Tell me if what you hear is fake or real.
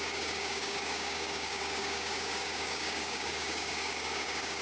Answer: fake